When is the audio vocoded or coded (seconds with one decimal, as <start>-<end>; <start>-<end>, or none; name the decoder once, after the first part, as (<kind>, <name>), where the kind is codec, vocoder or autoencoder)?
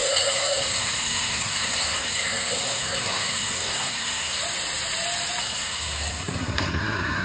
0.0-4.4 (codec, SNAC); 5.4-7.2